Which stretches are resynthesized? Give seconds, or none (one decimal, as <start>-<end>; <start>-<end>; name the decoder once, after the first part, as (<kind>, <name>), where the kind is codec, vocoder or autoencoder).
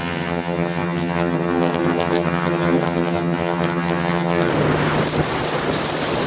0.0-4.5 (vocoder, HiFi-GAN)